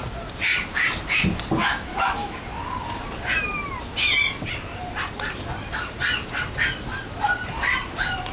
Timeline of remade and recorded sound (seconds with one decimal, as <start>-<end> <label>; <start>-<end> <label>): 0.0-1.6 recorded; 1.6-2.4 remade; 2.4-8.3 recorded